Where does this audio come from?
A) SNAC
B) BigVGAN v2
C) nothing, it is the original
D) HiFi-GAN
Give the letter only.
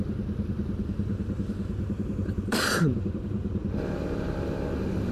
B